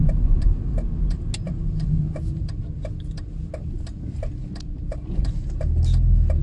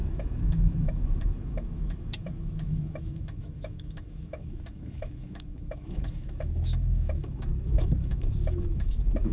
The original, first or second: first